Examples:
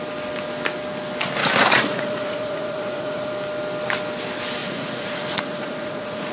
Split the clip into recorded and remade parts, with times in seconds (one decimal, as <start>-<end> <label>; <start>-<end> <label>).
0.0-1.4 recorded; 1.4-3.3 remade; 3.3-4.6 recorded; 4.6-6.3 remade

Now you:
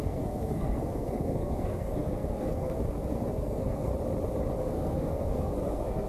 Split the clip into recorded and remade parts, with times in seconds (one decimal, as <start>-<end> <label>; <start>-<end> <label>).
0.0-3.9 remade; 3.9-4.6 recorded; 4.6-6.1 remade

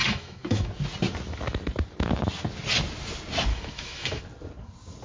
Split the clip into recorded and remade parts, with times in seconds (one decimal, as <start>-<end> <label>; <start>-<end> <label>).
0.0-0.7 remade; 0.7-3.5 recorded; 3.5-4.2 remade; 4.2-5.0 recorded

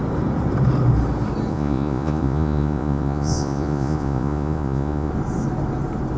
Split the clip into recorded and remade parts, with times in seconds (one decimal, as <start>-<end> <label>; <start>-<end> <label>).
0.0-1.5 recorded; 1.5-5.1 remade; 5.1-6.2 recorded

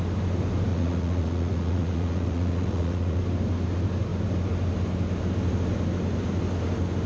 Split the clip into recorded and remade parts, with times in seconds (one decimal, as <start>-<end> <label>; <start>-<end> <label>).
0.0-0.7 recorded; 0.7-3.2 remade; 3.2-7.1 recorded

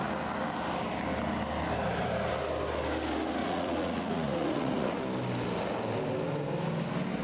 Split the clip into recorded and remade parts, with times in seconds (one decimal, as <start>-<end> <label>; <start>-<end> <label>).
0.0-3.4 recorded; 3.4-5.0 remade; 5.0-7.2 recorded

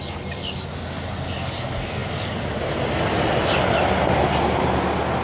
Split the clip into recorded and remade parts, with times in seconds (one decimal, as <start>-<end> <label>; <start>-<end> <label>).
0.0-5.2 recorded

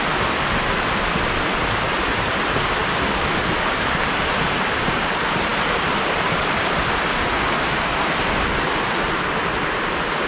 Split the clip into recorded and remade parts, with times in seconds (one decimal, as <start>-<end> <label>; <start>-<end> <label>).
0.0-10.3 recorded